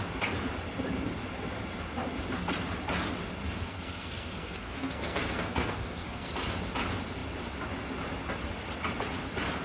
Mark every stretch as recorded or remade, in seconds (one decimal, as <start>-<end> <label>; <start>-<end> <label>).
0.0-3.4 recorded; 3.4-6.3 remade; 6.3-9.6 recorded